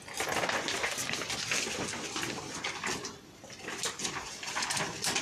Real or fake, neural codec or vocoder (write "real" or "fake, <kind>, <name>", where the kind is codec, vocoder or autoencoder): real